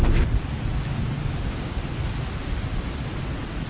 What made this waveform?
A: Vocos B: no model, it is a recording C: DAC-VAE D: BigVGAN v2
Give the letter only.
B